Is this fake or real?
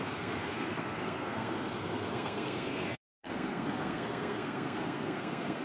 fake